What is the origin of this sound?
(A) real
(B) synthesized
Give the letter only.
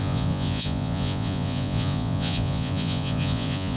B